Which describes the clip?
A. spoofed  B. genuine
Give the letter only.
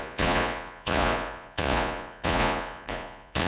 A